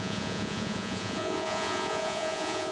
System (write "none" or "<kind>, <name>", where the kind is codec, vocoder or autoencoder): vocoder, Vocos